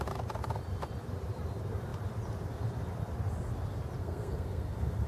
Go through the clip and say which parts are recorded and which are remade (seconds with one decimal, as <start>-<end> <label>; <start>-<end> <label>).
0.0-4.0 recorded; 4.0-5.1 remade